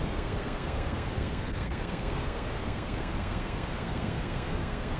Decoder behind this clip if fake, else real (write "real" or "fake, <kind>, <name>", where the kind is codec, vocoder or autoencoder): fake, codec, SNAC